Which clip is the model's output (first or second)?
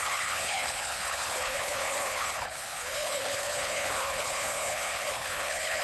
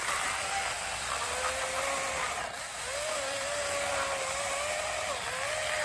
first